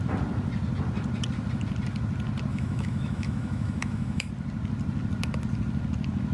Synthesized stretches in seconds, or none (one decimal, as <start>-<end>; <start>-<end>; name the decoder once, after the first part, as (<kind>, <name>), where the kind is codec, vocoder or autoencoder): 2.5-4.3 (autoencoder, DAC-VAE)